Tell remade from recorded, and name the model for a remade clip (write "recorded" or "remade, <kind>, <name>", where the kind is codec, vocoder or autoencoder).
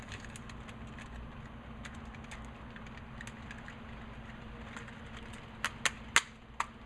recorded